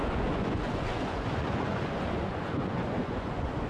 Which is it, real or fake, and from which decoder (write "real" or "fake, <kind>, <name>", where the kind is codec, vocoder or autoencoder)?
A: fake, vocoder, Vocos